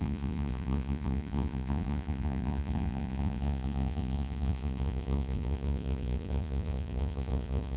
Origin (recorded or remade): remade